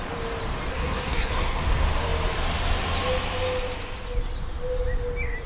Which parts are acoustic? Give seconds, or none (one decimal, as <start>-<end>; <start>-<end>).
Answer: 0.0-0.7; 1.6-5.5